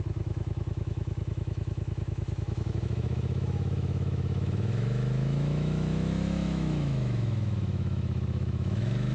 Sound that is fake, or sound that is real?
fake